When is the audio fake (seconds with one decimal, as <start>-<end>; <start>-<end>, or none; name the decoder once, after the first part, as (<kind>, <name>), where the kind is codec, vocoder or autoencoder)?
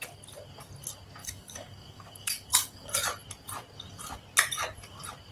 1.2-2.9 (codec, DAC)